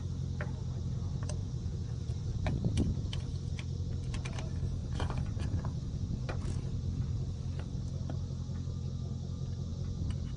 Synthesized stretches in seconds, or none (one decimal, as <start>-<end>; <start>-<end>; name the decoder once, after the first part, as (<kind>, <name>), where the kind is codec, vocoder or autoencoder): 1.4-2.7 (vocoder, Vocos); 4.8-6.3